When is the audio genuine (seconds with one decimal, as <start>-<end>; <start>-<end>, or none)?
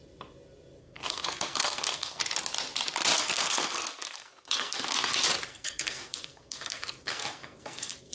0.0-0.8; 2.2-3.2; 5.1-5.5